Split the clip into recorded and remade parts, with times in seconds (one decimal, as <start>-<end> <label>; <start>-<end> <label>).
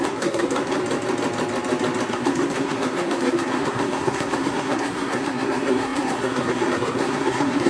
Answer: 0.0-0.8 remade; 0.8-2.1 recorded; 2.1-7.7 remade